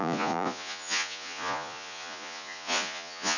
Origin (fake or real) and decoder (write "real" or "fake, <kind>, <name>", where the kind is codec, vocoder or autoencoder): fake, vocoder, Vocos